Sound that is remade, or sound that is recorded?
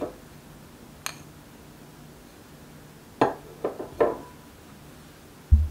recorded